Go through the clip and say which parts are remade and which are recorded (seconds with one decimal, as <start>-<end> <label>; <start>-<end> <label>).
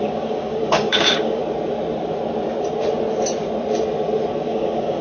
0.0-1.4 remade; 1.4-4.4 recorded; 4.4-5.0 remade